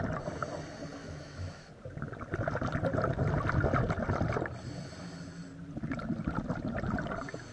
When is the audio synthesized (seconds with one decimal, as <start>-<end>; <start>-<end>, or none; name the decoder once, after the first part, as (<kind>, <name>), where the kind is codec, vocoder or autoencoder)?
1.0-1.7 (autoencoder, DAC-VAE)